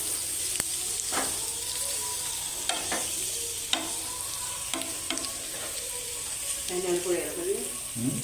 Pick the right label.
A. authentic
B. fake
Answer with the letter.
A